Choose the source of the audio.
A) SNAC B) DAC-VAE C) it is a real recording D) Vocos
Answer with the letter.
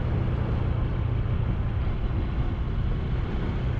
C